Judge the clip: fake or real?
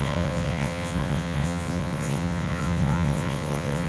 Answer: fake